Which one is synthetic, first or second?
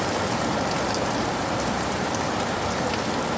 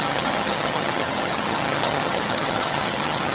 second